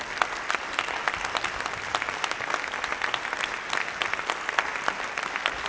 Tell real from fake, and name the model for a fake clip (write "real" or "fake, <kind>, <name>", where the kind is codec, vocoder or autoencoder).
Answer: real